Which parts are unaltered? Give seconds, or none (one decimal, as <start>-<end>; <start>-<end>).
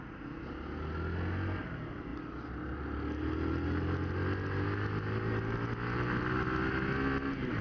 0.0-7.6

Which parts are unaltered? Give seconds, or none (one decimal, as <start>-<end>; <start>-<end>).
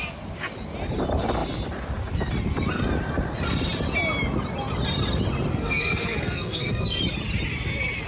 0.0-5.5; 7.0-8.1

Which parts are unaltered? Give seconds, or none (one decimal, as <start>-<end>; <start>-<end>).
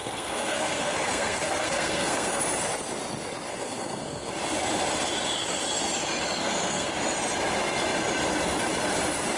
2.4-3.5; 4.3-6.4; 6.9-9.4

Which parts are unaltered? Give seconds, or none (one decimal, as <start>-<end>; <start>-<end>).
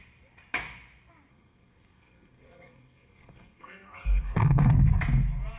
0.0-1.3; 4.7-5.6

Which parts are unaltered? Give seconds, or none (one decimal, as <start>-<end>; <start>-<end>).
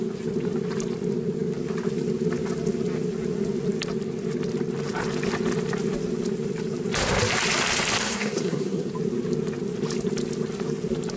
0.0-8.0; 8.9-11.2